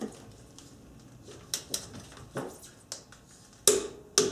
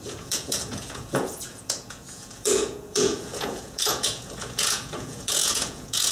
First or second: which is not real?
second